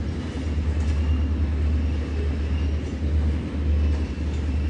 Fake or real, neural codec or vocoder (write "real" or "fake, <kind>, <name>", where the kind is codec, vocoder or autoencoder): real